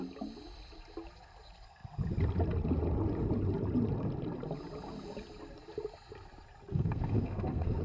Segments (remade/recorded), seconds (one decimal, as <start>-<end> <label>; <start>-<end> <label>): 0.0-6.7 recorded; 6.7-7.8 remade